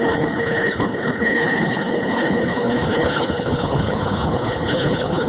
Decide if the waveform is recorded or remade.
remade